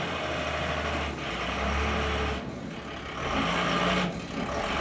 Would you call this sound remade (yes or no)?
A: no